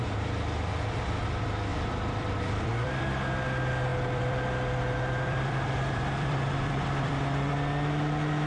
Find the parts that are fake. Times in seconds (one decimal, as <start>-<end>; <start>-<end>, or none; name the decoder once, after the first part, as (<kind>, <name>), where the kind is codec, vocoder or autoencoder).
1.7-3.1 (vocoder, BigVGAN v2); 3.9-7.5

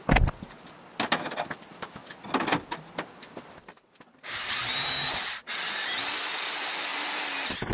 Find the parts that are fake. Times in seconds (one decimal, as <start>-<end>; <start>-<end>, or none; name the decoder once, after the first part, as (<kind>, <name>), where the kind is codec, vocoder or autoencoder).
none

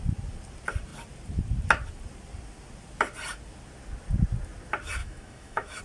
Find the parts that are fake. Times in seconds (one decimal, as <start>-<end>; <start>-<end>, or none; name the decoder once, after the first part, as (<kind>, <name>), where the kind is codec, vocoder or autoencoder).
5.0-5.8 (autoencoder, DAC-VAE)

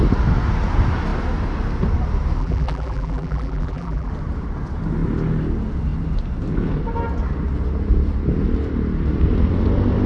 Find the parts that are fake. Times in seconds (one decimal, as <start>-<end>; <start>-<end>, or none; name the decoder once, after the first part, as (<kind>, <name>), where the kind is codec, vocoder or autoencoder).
2.4-4.1 (vocoder, BigVGAN v2)

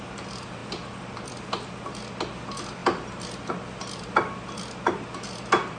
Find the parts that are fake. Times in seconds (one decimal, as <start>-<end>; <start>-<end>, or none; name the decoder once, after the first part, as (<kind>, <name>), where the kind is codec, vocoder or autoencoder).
none

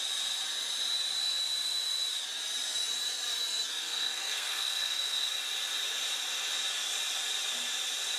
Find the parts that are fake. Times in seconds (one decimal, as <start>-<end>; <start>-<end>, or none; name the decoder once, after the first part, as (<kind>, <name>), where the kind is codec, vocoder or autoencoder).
3.8-5.3 (codec, SNAC)

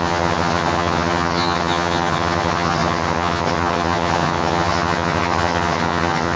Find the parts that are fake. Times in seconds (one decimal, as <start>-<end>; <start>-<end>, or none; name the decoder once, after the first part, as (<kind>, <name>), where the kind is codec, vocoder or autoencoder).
0.0-6.4 (vocoder, HiFi-GAN)

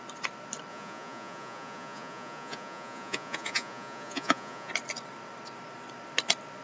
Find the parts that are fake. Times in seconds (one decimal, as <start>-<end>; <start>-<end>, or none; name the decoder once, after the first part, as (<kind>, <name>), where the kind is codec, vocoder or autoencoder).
0.7-4.7 (vocoder, Vocos)